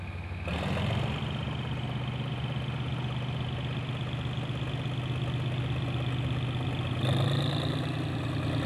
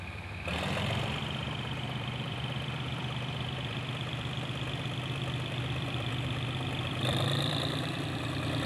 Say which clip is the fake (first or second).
second